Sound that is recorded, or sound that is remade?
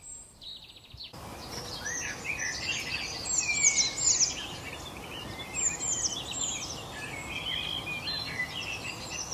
recorded